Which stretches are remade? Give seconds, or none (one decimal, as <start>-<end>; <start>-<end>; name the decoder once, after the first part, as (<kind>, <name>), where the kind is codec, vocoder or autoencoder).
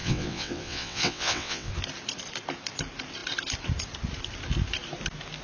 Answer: 0.0-1.7 (vocoder, WaveNeXt)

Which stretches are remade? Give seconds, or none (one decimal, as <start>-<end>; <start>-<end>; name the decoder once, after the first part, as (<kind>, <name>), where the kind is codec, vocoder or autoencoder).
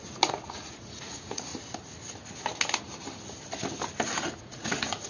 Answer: 0.0-1.5 (vocoder, Vocos); 4.4-5.1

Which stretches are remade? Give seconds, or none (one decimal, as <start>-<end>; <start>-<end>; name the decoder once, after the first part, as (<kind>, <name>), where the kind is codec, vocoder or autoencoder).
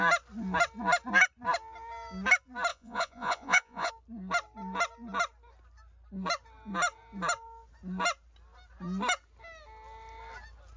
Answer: 2.7-3.9 (vocoder, Vocos)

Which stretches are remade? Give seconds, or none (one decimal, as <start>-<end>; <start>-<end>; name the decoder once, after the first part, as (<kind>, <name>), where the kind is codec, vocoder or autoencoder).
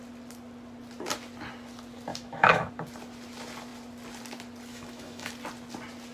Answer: 2.1-2.7 (autoencoder, DAC-VAE); 4.7-5.3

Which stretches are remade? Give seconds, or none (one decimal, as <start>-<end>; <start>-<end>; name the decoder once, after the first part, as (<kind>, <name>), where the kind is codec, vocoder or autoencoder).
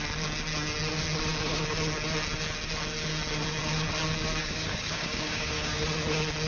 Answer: 4.4-5.8 (codec, DAC)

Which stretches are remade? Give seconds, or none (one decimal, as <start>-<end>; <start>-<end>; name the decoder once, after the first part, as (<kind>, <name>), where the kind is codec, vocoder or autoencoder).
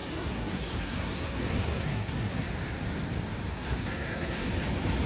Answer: 0.0-2.5 (codec, SNAC); 3.5-4.5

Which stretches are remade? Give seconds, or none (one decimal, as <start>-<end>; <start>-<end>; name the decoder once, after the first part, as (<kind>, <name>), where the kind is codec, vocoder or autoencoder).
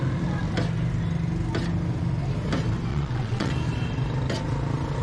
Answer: 2.9-3.5 (vocoder, WaveNeXt)